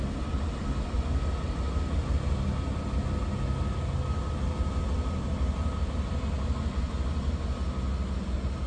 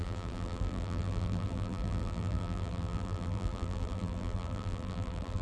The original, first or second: first